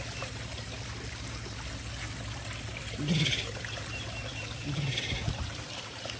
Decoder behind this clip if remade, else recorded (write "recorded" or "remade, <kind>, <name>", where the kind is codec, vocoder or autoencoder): recorded